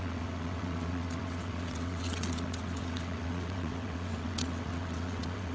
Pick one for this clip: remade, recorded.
remade